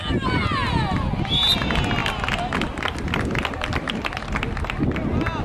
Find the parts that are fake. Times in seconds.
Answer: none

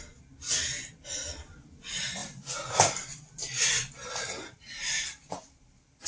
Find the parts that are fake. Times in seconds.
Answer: 2.2-6.1 (vocoder, BigVGAN v2)

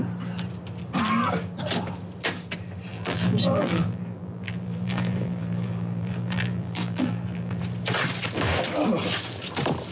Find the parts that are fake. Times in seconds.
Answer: 2.9-7.6 (vocoder, BigVGAN v2)

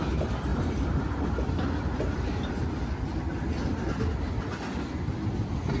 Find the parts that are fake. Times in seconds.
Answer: 0.5-1.4 (vocoder, BigVGAN v2)

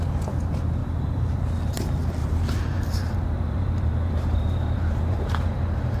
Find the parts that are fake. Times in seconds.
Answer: 0.8-1.4 (vocoder, BigVGAN v2); 2.2-6.0